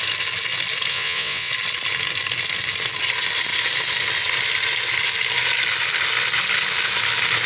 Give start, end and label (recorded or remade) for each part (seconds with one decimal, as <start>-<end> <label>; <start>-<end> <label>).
0.0-0.9 recorded; 0.9-1.5 remade; 1.5-7.5 recorded